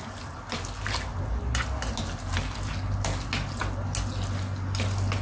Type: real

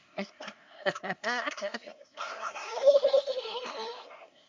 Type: fake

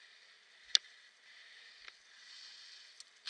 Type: real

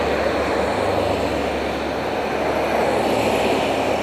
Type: real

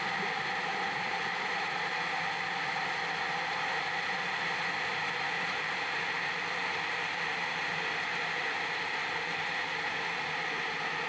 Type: real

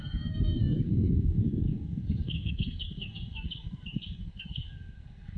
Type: fake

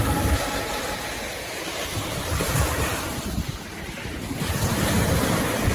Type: real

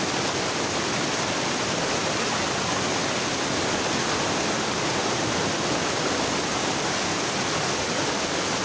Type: real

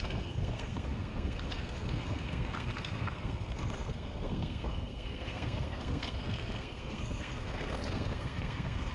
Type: fake